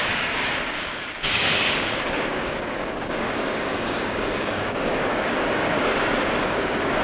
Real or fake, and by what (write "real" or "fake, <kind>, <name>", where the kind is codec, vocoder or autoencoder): fake, codec, DAC